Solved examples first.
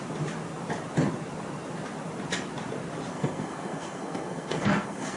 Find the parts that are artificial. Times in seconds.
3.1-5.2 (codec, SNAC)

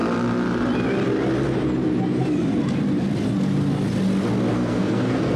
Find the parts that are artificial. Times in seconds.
4.5-5.4 (codec, SNAC)

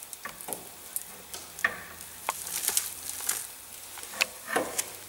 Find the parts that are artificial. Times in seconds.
none